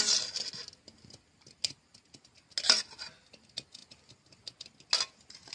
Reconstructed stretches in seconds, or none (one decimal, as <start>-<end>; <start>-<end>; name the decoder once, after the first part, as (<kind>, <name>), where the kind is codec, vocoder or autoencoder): none